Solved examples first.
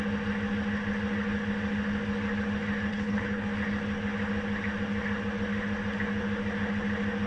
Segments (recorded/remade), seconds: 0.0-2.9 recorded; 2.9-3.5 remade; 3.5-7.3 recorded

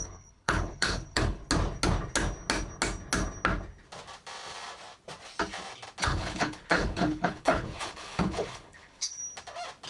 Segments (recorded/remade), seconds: 0.0-1.4 remade; 1.4-6.0 recorded; 6.0-9.2 remade; 9.2-9.9 recorded

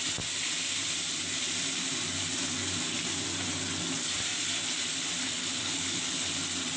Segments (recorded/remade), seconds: 0.0-5.2 recorded; 5.2-6.3 remade; 6.3-6.8 recorded

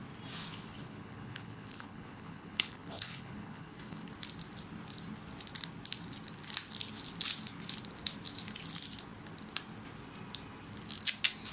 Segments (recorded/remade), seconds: 0.0-0.5 recorded; 0.5-4.1 remade; 4.1-11.5 recorded

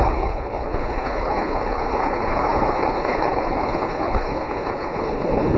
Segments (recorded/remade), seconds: 0.0-5.6 remade

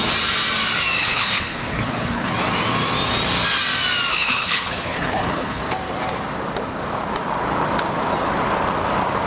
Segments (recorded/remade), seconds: 0.0-1.0 recorded; 1.0-2.3 remade; 2.3-4.1 recorded; 4.1-5.6 remade; 5.6-9.3 recorded

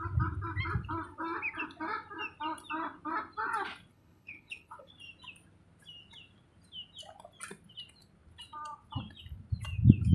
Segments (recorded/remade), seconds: 0.0-3.9 recorded; 3.9-4.9 remade; 4.9-10.1 recorded